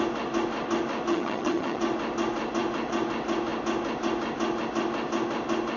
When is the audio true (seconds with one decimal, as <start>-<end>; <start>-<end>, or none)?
0.0-1.1; 1.8-5.8